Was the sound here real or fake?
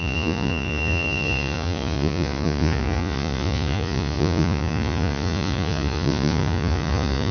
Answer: fake